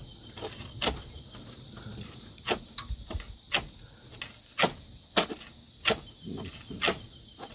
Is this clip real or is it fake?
real